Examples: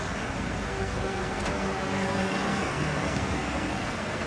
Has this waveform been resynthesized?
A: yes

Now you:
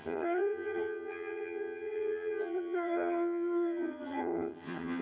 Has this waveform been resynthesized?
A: yes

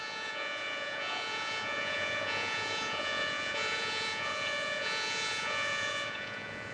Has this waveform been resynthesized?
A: yes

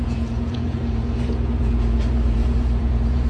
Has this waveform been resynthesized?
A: yes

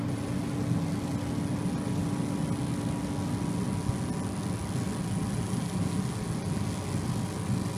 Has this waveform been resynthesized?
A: no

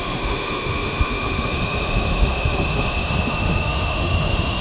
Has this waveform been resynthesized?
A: yes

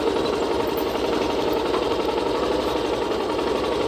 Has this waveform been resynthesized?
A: no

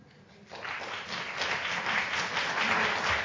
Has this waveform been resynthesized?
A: no